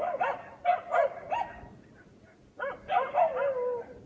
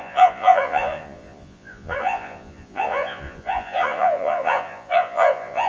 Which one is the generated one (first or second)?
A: second